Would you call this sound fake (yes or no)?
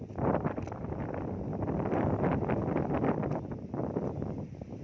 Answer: yes